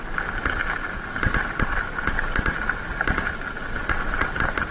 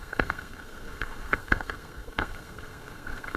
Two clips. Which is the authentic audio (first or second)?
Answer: first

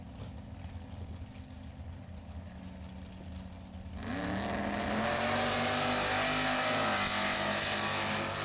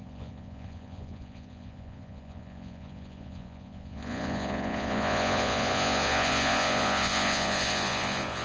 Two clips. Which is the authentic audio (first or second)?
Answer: first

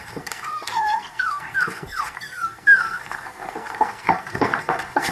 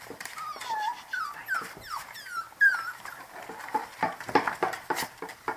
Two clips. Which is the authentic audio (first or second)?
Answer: second